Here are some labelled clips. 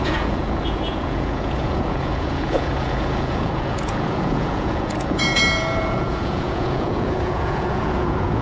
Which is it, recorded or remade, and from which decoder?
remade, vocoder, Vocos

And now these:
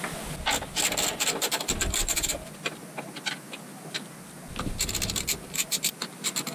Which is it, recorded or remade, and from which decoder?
recorded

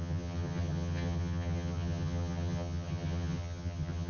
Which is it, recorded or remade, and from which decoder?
remade, vocoder, HiFi-GAN